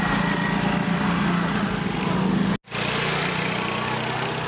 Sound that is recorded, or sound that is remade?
recorded